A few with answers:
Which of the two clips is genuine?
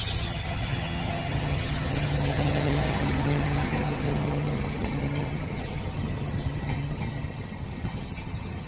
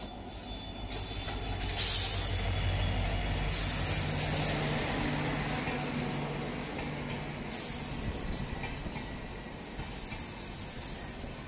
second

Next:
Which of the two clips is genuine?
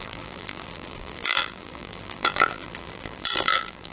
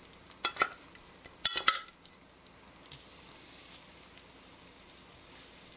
second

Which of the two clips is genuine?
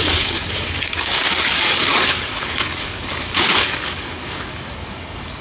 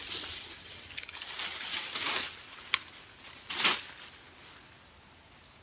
second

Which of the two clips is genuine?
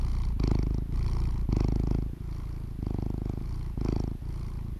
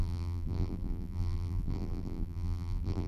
first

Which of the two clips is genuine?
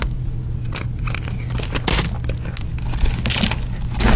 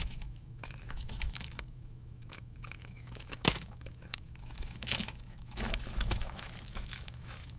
first